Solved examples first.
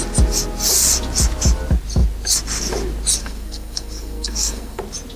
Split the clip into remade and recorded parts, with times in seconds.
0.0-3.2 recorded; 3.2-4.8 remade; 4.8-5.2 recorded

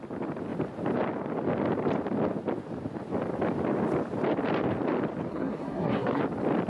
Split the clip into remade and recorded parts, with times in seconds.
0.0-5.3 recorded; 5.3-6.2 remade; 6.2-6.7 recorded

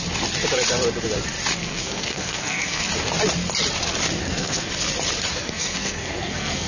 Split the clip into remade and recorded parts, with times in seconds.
0.0-1.6 recorded; 1.6-2.9 remade; 2.9-4.2 recorded; 4.2-4.7 remade; 4.7-5.3 recorded; 5.3-6.7 remade

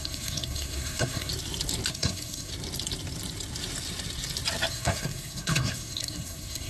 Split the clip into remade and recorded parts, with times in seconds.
0.0-1.3 remade; 1.3-1.9 recorded; 1.9-2.5 remade; 2.5-4.7 recorded; 4.7-6.7 remade